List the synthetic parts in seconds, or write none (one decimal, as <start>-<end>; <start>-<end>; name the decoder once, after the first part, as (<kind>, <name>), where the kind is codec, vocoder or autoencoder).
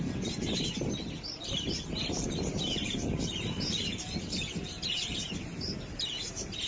none